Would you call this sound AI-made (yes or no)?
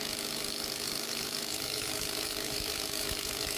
yes